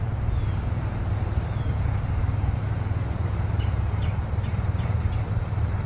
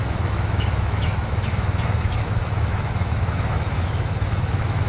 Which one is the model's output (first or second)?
second